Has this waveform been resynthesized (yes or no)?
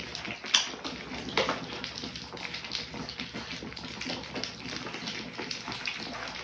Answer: no